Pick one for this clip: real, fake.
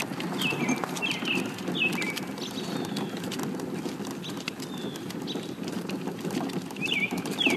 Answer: real